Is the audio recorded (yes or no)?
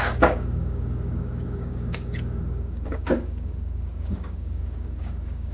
no